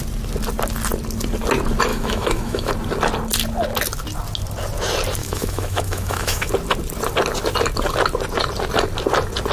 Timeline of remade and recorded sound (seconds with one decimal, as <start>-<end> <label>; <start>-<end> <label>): 0.0-1.9 recorded; 1.9-2.7 remade; 2.7-5.2 recorded; 5.2-6.5 remade; 6.5-9.5 recorded